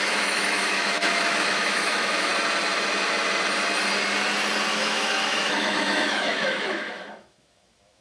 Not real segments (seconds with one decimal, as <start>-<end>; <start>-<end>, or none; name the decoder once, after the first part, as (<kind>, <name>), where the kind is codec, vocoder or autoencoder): 0.0-2.3 (autoencoder, DAC-VAE); 4.8-8.0